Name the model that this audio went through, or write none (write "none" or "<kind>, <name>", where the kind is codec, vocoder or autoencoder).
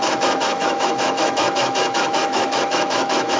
autoencoder, DAC-VAE